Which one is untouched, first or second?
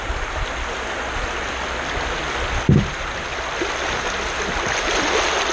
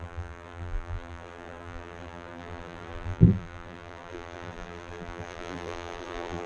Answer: first